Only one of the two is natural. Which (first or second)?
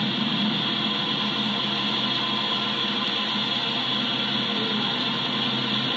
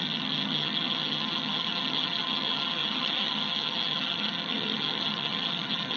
first